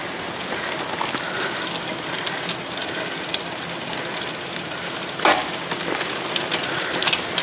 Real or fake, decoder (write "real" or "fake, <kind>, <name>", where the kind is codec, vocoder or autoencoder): real